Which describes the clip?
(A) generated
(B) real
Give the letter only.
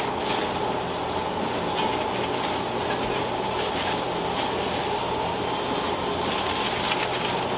B